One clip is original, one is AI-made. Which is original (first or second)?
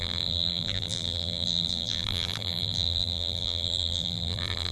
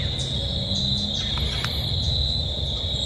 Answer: second